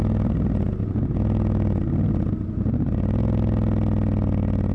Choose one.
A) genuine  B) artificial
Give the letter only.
A